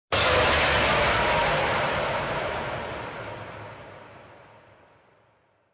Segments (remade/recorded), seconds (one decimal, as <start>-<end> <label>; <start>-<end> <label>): 0.0-5.7 recorded